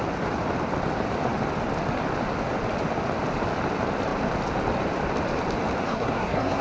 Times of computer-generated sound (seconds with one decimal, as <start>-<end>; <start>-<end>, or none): 5.8-6.6